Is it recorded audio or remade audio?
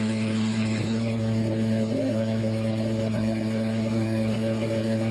remade